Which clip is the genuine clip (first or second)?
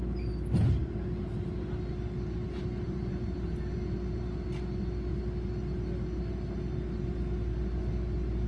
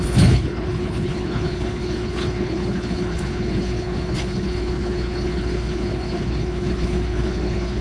first